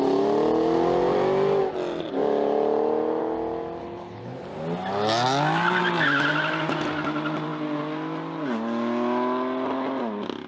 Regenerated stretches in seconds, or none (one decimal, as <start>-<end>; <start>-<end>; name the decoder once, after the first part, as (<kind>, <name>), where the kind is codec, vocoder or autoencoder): 3.8-4.5 (codec, HILCodec)